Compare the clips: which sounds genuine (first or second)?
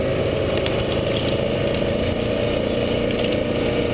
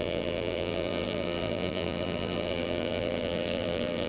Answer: first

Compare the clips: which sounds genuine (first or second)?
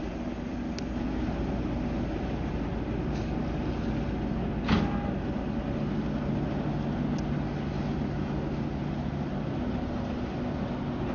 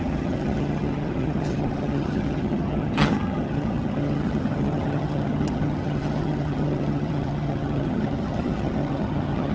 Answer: first